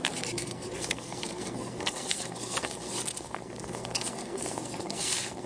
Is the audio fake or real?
fake